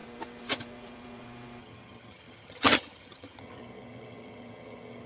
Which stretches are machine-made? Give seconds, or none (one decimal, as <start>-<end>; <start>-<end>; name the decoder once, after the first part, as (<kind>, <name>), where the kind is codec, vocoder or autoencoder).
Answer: 1.6-5.1 (vocoder, HiFi-GAN)